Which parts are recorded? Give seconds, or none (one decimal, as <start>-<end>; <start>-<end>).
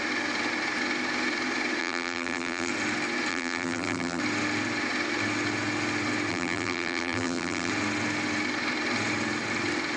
0.0-1.8; 2.7-3.3; 4.2-6.3; 7.7-10.0